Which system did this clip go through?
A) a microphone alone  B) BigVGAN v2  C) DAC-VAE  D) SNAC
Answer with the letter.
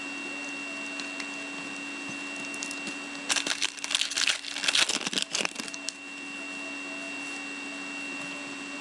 A